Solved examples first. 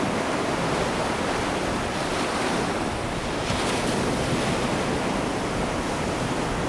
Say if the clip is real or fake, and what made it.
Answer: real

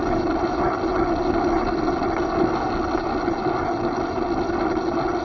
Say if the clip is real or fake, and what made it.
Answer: real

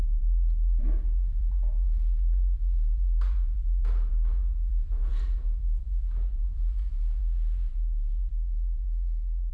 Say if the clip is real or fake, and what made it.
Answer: fake, vocoder, BigVGAN v2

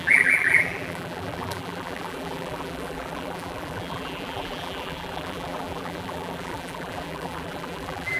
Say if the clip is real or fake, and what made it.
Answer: fake, vocoder, BigVGAN v2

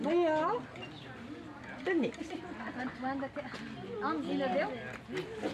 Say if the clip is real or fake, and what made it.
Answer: real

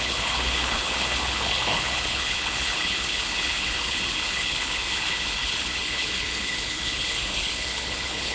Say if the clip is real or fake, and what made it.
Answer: fake, codec, HILCodec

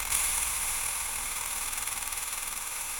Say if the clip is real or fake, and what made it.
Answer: fake, autoencoder, DAC-VAE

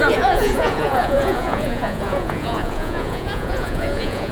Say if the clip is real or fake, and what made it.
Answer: fake, vocoder, Vocos